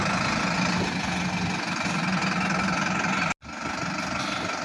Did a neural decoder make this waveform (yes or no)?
no